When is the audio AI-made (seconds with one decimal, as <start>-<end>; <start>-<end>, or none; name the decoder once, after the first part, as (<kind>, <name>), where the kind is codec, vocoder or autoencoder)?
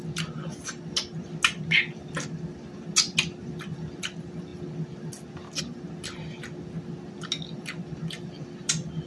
none